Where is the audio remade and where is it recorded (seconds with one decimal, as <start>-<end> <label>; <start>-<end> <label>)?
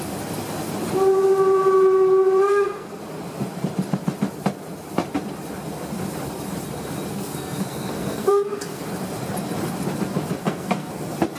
0.0-2.5 recorded; 2.5-3.0 remade; 3.0-7.1 recorded; 7.1-8.8 remade; 8.8-10.4 recorded; 10.4-10.9 remade; 10.9-11.4 recorded